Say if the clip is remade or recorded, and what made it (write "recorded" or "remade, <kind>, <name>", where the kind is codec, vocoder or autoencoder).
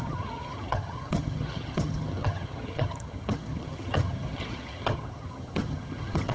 remade, vocoder, HiFi-GAN